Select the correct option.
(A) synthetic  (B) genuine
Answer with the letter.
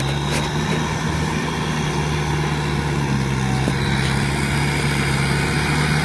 B